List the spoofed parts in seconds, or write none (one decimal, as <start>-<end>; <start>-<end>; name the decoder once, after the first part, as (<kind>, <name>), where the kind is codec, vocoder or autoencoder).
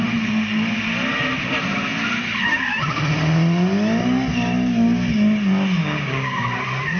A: 5.8-6.5 (codec, DAC)